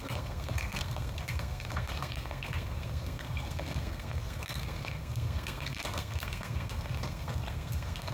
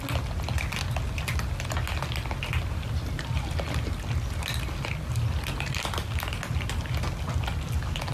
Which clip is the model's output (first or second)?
first